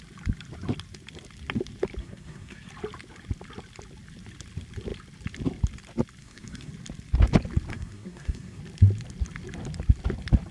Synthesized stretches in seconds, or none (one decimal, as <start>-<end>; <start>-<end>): 2.0-2.7; 6.2-6.7; 7.7-8.6